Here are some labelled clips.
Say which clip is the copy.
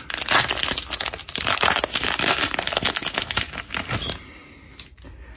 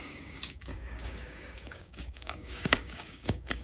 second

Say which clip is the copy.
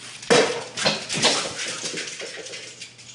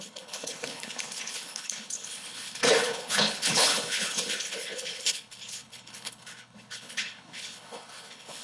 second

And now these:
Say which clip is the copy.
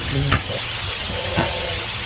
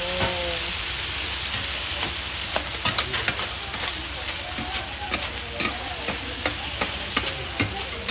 first